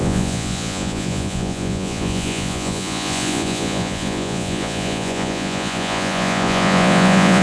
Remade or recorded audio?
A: remade